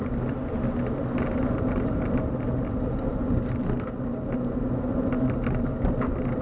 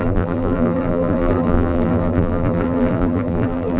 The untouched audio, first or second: first